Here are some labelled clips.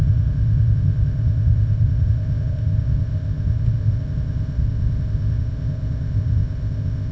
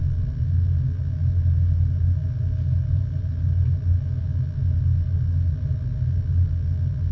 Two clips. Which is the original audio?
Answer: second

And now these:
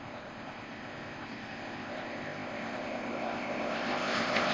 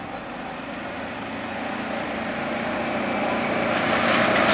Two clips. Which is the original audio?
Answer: second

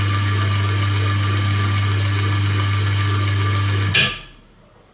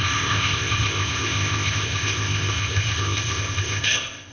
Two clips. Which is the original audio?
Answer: first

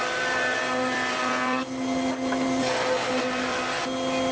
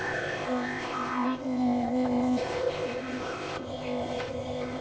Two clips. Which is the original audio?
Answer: first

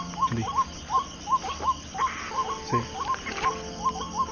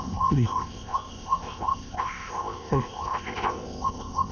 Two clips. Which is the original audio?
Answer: first